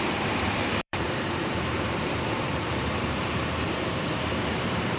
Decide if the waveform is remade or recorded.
remade